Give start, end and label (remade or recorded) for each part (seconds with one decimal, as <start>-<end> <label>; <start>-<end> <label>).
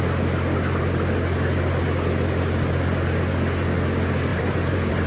0.0-4.3 recorded; 4.3-5.1 remade